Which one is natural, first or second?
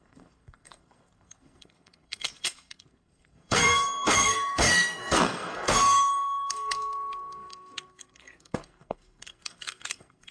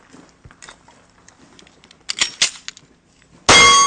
second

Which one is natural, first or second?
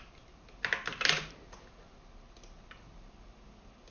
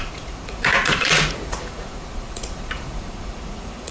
first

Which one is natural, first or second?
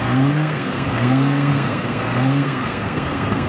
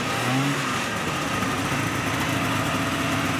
second